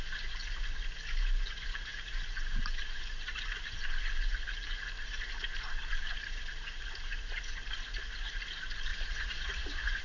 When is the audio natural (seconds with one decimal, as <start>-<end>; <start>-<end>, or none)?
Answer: 0.0-8.9